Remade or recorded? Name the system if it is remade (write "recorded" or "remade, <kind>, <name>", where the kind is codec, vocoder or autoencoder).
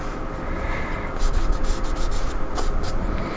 recorded